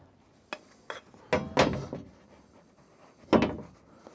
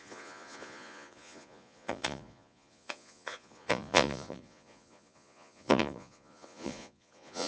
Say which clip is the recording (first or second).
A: first